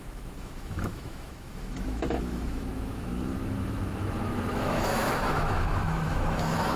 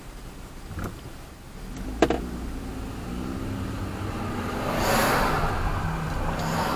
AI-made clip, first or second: first